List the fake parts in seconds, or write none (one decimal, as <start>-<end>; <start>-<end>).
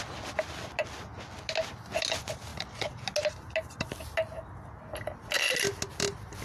none